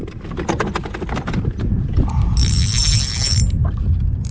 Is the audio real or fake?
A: real